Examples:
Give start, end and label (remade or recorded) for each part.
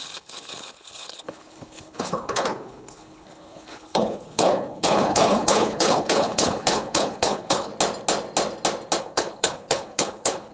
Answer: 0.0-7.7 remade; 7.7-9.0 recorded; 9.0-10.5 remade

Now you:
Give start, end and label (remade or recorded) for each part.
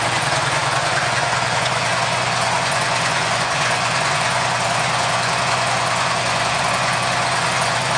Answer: 0.0-8.0 remade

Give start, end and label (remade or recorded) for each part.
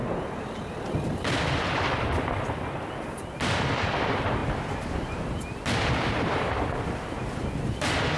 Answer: 0.0-0.9 recorded; 0.9-4.4 remade; 4.4-7.4 recorded; 7.4-8.2 remade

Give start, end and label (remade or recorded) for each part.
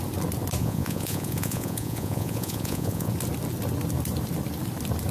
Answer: 0.0-0.6 recorded; 0.6-3.1 remade; 3.1-5.1 recorded